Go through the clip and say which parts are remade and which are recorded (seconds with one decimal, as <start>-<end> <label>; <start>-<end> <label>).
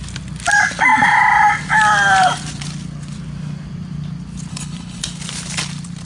0.0-4.5 recorded; 4.5-5.0 remade; 5.0-6.1 recorded